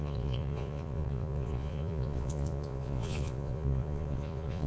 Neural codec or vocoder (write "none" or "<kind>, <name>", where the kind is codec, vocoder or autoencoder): vocoder, Vocos